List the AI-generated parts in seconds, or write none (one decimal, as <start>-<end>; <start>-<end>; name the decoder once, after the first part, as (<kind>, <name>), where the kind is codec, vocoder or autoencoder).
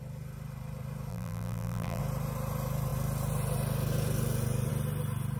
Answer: 1.1-2.0 (vocoder, BigVGAN v2)